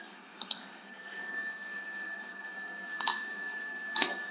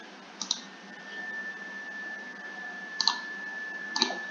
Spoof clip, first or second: first